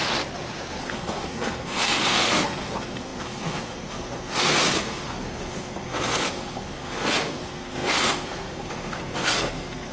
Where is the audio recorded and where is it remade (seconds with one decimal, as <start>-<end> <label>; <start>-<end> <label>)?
0.0-0.8 recorded; 0.8-9.9 remade